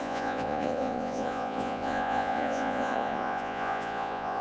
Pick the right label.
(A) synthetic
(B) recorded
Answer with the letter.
A